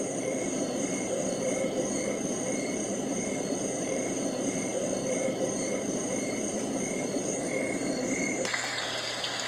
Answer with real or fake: fake